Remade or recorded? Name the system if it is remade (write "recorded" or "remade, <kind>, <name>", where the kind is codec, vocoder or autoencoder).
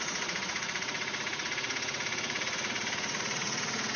remade, vocoder, Vocos